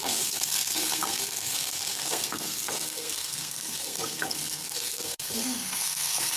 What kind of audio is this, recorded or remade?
remade